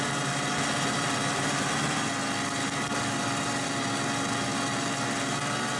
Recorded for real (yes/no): yes